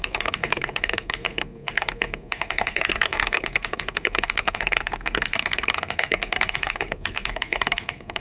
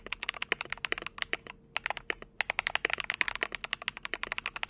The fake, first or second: first